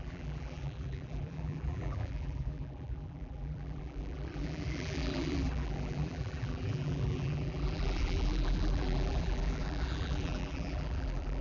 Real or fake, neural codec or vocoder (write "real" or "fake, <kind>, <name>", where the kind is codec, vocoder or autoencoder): fake, vocoder, BigVGAN v2